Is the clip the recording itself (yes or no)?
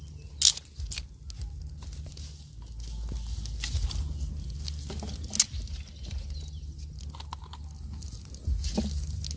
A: yes